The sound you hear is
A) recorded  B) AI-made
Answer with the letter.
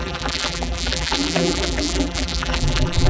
B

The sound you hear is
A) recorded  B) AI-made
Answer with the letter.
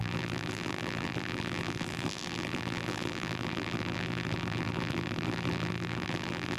B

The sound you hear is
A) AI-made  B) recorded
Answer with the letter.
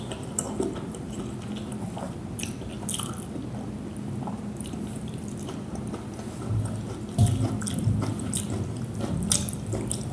A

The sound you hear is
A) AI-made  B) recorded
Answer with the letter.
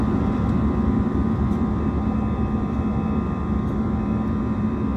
A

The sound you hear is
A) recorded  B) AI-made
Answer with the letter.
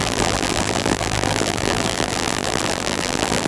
B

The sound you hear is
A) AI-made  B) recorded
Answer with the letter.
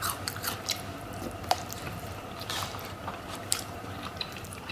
A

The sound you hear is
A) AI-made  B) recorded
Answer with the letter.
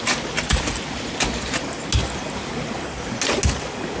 B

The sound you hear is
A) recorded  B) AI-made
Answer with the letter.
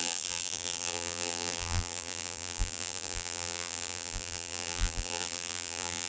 B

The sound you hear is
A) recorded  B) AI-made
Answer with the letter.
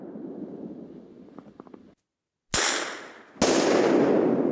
A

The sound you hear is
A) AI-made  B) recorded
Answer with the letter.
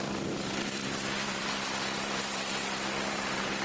A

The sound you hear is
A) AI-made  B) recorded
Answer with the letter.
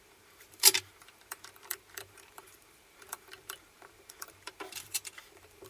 A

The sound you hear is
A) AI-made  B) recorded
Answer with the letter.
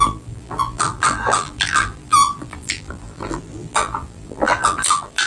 A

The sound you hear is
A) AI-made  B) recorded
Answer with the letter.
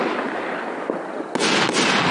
B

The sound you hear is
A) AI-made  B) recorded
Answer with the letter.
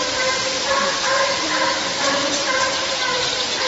B